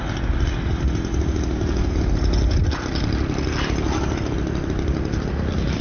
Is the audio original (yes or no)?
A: yes